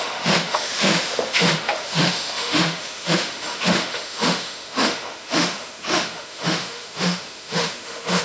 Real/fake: fake